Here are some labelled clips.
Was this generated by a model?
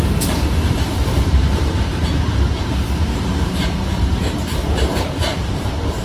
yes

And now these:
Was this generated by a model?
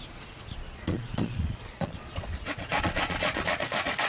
yes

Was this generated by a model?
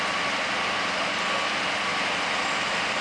no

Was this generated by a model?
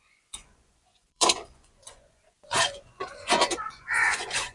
yes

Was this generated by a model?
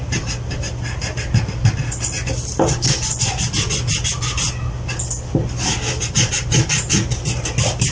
no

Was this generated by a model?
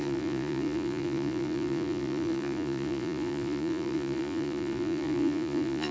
yes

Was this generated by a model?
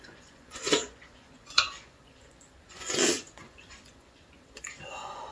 yes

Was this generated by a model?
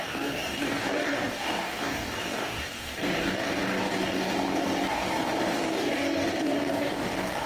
yes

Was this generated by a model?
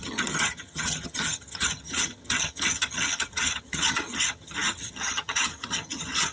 yes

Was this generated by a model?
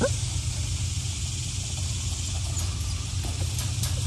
no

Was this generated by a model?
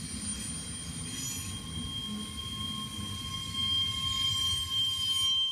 no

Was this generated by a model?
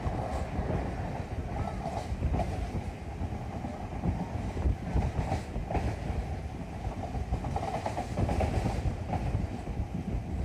no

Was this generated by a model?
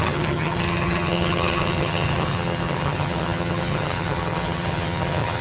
yes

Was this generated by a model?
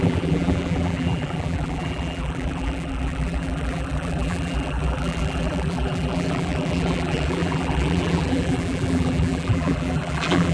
yes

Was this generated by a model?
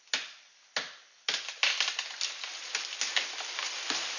no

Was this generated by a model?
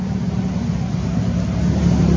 no